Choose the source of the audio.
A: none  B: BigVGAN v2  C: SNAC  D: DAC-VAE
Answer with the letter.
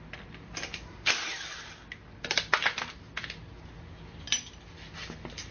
A